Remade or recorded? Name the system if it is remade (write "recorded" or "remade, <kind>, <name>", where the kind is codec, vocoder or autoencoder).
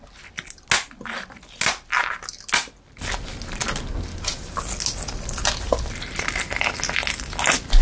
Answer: recorded